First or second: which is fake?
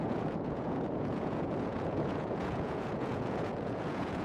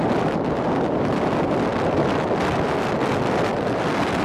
first